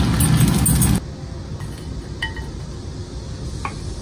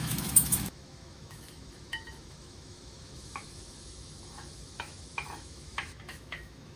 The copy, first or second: second